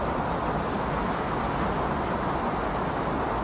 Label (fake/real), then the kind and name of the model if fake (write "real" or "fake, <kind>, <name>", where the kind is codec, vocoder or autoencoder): real